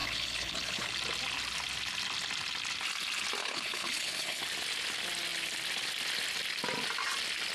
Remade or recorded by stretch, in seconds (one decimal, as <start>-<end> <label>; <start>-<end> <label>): 0.0-0.9 remade; 0.9-3.4 recorded; 3.4-4.4 remade; 4.4-7.5 recorded